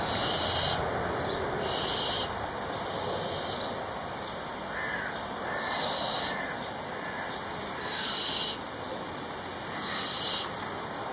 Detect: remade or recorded recorded